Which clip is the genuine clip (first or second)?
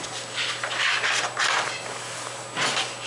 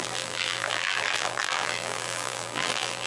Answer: first